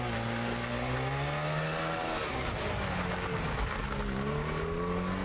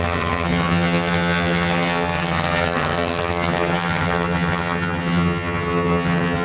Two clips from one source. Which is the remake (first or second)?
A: second